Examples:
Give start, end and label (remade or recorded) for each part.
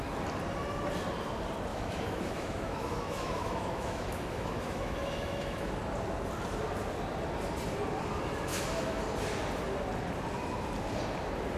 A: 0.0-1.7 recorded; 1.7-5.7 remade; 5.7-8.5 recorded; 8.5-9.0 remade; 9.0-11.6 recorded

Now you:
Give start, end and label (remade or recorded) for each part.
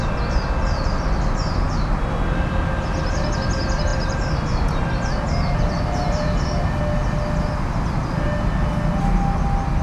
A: 0.0-3.9 recorded; 3.9-6.8 remade; 6.8-9.8 recorded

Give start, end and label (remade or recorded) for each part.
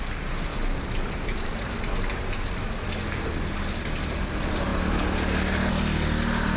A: 0.0-0.5 recorded; 0.5-1.9 remade; 1.9-6.6 recorded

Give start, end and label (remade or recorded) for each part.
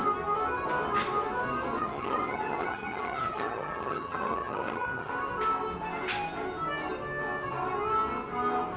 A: 0.0-1.8 recorded; 1.8-5.1 remade; 5.1-8.8 recorded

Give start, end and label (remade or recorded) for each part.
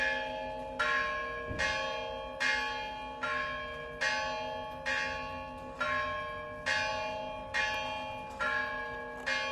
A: 0.0-9.5 recorded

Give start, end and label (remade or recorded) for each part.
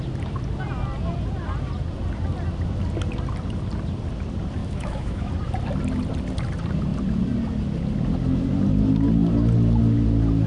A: 0.0-4.6 recorded; 4.6-5.3 remade; 5.3-10.5 recorded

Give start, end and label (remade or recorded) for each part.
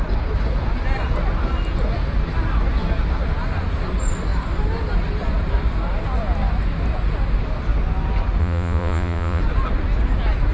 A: 0.0-8.4 recorded; 8.4-9.4 remade; 9.4-10.5 recorded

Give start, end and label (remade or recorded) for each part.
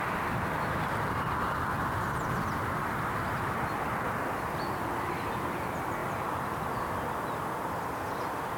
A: 0.0-8.6 recorded